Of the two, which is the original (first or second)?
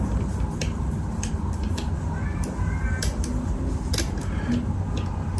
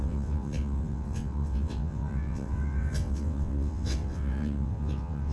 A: first